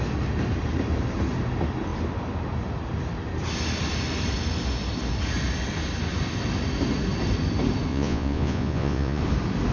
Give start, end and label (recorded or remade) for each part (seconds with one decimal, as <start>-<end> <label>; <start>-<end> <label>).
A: 0.0-7.9 recorded; 7.9-9.2 remade; 9.2-9.7 recorded